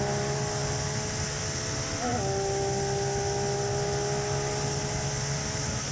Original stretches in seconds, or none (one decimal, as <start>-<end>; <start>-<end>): 0.0-5.9